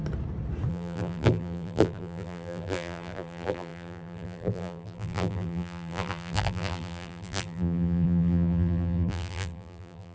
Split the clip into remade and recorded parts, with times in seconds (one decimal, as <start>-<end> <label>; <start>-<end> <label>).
0.0-0.7 recorded; 0.7-10.1 remade